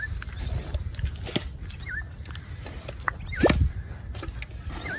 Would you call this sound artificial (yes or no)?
no